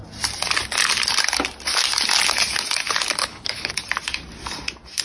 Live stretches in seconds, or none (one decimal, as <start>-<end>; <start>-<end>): 0.0-3.2; 3.7-5.0